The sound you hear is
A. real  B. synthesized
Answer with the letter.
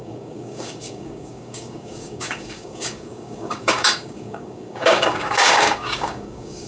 B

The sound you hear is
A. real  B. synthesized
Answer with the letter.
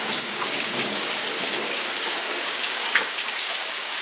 B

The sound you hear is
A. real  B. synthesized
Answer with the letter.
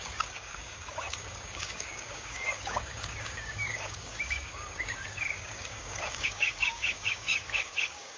B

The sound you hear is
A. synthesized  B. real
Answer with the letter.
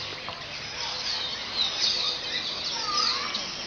B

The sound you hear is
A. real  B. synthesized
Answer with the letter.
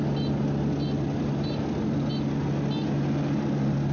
A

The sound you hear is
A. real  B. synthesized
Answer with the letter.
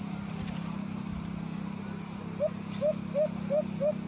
A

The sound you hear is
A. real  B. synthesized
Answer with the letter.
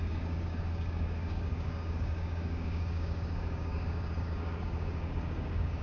B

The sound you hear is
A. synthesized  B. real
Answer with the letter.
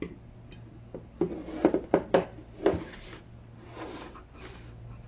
B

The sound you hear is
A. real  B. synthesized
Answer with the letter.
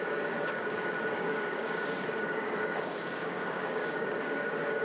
B